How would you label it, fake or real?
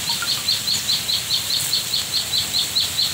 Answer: real